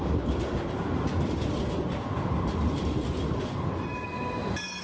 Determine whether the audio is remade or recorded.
recorded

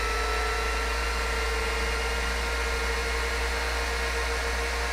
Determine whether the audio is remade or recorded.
recorded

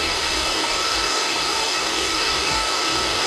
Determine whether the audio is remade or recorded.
remade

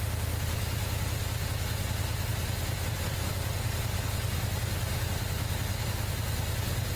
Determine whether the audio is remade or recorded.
recorded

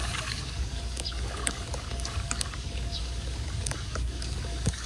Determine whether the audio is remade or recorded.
remade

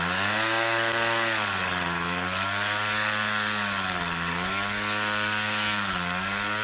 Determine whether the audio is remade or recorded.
remade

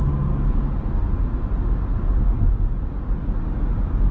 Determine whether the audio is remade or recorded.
recorded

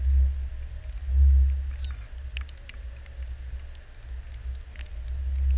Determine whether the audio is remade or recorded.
recorded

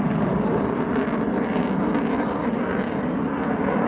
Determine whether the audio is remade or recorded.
recorded